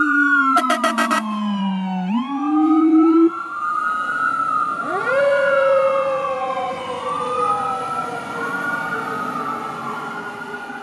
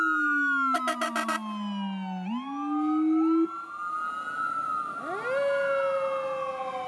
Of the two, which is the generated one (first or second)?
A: first